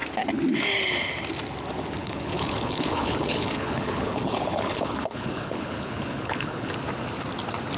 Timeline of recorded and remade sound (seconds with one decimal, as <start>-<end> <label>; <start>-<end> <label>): 0.0-2.0 recorded; 2.0-6.7 remade; 6.7-7.8 recorded